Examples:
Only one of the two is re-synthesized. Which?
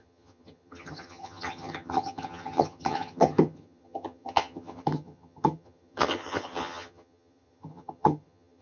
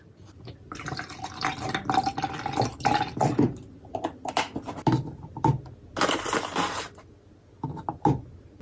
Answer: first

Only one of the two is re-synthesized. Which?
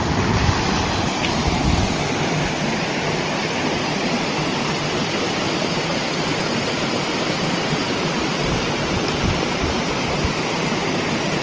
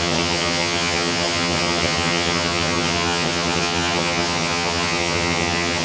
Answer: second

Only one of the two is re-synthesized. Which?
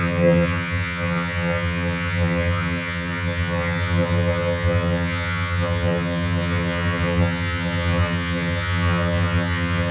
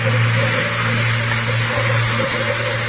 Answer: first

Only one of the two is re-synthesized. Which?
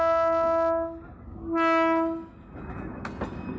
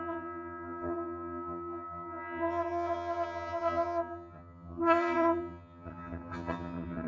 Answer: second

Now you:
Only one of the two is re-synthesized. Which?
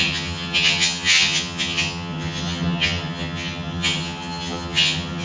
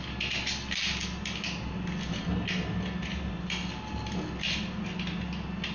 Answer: first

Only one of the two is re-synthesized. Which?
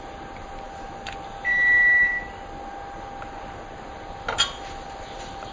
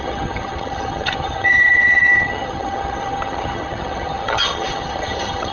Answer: second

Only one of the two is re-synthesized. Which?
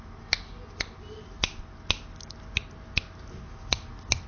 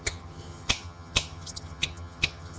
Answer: second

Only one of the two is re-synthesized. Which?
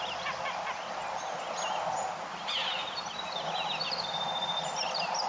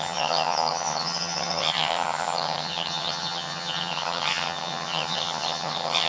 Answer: second